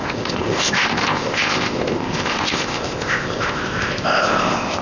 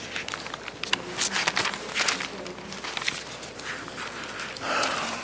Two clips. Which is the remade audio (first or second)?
first